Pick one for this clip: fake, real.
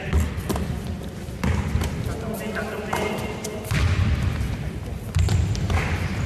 real